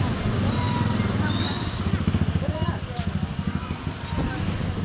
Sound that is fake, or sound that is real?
real